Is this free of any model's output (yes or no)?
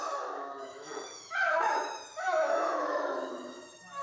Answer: no